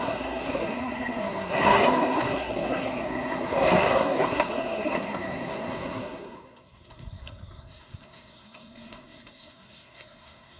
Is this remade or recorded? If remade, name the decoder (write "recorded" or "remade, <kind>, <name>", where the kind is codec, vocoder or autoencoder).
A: remade, codec, SNAC